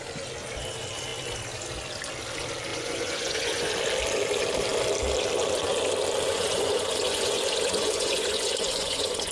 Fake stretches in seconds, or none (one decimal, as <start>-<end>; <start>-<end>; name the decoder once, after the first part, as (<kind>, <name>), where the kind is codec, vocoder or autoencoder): 2.7-3.7 (vocoder, Vocos); 6.3-9.3